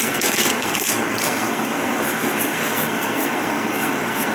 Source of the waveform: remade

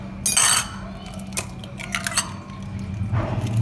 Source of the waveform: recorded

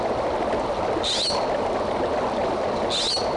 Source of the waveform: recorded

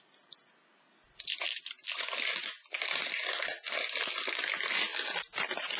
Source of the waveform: recorded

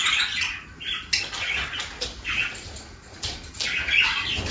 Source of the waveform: recorded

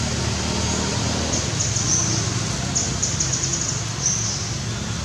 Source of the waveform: recorded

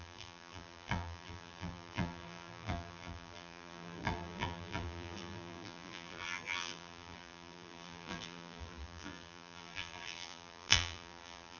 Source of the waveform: remade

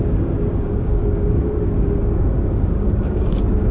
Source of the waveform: remade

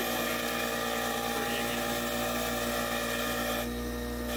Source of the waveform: recorded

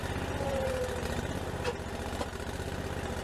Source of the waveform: recorded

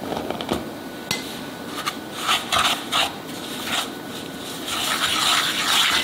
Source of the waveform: recorded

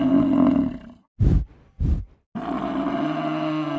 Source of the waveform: recorded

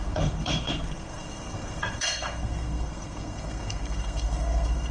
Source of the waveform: remade